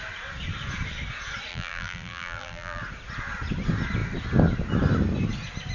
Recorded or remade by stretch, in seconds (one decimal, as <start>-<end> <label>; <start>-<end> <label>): 0.0-1.5 recorded; 1.5-2.8 remade; 2.8-5.7 recorded